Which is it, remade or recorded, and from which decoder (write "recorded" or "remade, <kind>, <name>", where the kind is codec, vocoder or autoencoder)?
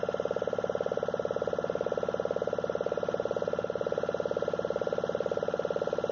recorded